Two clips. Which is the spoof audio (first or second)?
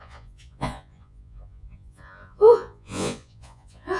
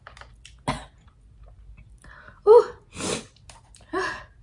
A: first